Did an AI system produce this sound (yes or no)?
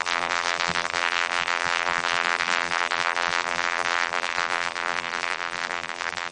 yes